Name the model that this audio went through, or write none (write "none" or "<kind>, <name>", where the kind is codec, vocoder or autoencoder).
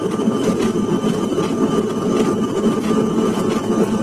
none